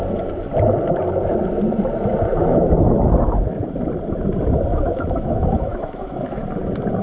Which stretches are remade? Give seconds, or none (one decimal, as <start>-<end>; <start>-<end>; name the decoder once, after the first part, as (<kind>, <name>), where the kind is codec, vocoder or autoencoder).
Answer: 2.4-3.0 (autoencoder, DAC-VAE); 4.7-6.4